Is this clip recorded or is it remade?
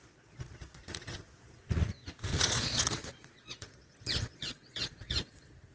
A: remade